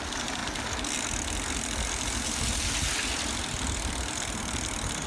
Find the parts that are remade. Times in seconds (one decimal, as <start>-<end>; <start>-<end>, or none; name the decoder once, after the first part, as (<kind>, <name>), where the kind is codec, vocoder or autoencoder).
none